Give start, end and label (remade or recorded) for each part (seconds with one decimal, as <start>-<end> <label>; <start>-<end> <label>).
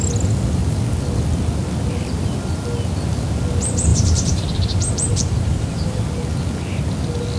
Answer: 0.0-3.9 recorded; 3.9-6.0 remade; 6.0-7.4 recorded